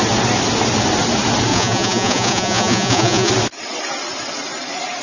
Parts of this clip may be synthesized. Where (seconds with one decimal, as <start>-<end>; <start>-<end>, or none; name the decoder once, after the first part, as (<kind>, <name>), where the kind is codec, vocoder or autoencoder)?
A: 1.5-3.3 (vocoder, Vocos)